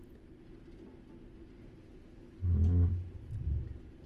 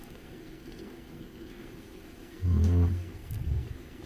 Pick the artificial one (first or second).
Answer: second